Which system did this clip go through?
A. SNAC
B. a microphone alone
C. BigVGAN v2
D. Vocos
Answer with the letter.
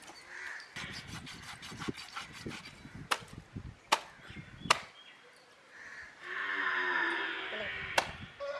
B